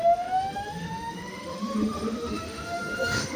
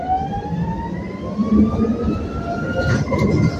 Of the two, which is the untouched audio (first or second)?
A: second